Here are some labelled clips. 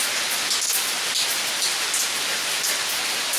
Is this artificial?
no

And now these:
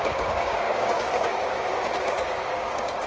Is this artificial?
yes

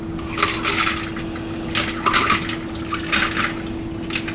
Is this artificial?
no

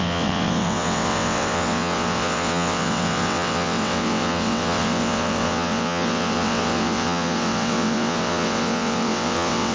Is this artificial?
yes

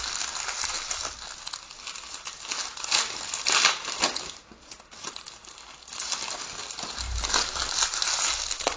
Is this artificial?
no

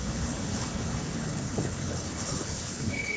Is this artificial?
yes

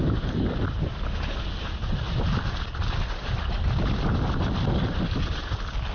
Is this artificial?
no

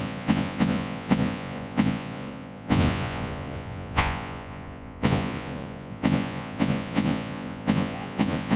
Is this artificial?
yes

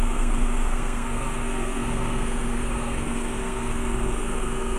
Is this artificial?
yes